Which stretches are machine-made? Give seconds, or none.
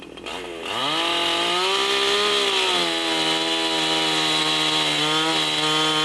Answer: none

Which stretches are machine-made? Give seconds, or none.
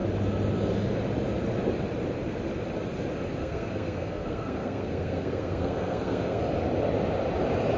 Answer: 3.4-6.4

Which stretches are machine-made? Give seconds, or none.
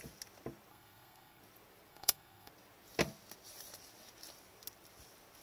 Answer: 0.7-1.4; 1.9-2.5